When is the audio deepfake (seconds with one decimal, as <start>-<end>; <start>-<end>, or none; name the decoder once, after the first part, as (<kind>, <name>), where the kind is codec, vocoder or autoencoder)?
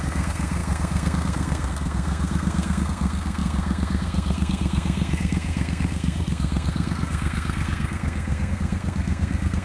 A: 0.0-9.6 (codec, SNAC)